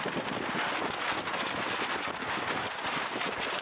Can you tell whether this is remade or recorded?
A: recorded